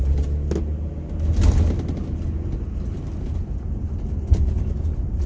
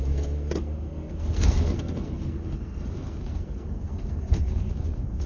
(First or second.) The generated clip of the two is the second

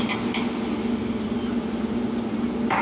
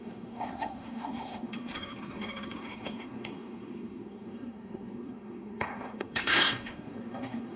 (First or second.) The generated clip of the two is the second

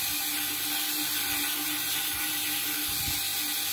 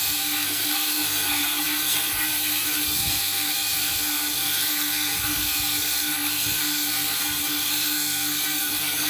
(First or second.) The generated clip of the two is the second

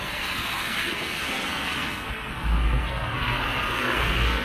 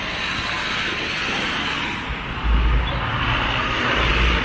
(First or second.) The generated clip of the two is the first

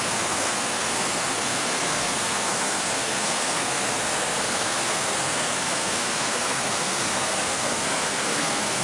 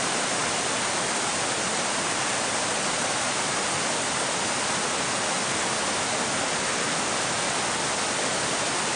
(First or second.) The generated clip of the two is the first